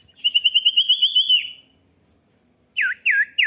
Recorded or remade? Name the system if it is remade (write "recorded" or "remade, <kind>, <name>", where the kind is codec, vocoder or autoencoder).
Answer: recorded